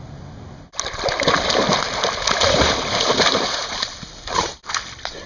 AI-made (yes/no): no